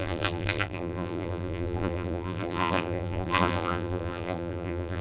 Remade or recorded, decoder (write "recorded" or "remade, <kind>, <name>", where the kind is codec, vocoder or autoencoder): remade, vocoder, BigVGAN v2